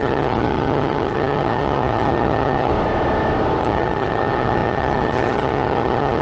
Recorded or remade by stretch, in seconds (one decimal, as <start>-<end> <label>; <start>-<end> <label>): 0.0-2.7 remade; 2.7-3.6 recorded; 3.6-6.2 remade